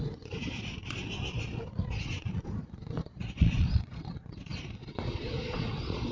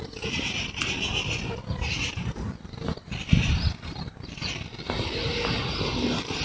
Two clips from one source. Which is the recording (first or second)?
second